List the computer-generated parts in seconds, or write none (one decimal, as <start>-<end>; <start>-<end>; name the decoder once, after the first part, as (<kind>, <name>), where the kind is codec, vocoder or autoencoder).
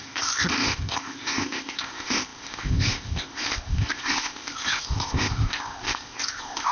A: 0.0-6.7 (codec, ZipCodec)